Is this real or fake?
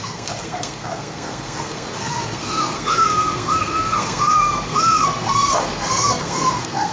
fake